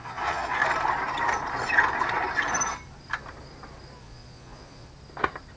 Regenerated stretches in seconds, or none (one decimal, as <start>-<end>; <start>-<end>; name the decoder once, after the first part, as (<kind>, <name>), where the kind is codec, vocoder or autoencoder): 0.0-0.6 (vocoder, Vocos); 4.0-4.9